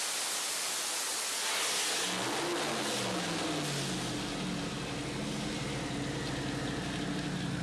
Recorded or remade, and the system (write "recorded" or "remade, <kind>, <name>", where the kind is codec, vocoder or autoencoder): recorded